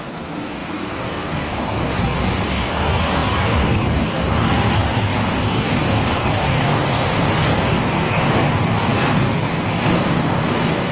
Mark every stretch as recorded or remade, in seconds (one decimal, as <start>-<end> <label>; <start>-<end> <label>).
0.0-10.9 remade

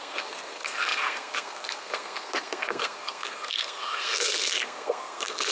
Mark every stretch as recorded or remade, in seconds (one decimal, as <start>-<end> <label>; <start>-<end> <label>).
0.0-5.5 remade